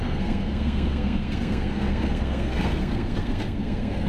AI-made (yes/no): yes